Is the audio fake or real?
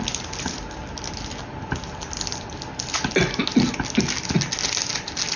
real